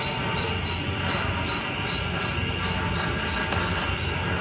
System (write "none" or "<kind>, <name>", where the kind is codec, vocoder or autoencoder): none